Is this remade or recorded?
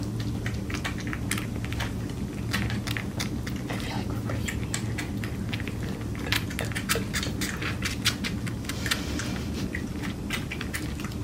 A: recorded